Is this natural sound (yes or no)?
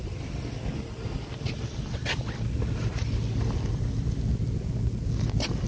yes